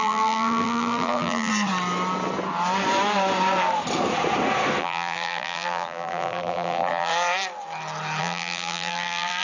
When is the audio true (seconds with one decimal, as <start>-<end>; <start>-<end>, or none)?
1.5-4.8; 7.1-8.2